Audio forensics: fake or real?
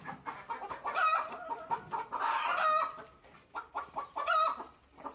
real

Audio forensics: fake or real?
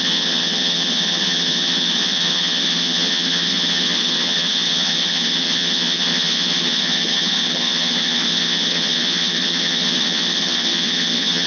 fake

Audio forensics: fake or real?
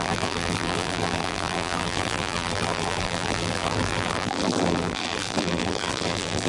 fake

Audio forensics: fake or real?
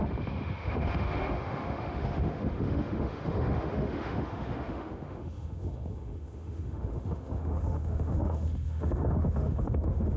fake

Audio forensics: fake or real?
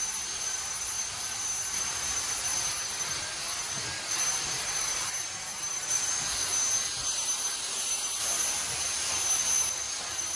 real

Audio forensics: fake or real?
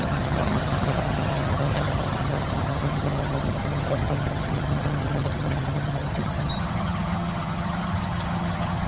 fake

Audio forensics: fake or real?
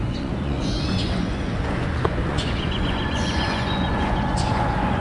fake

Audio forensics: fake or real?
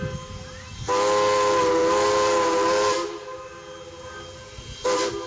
real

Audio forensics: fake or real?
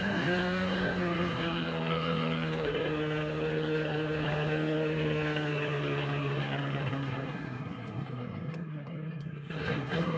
fake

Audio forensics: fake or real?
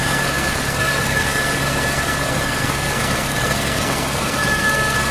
fake